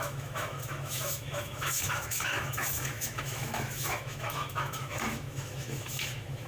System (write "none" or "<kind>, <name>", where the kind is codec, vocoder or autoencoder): autoencoder, DAC-VAE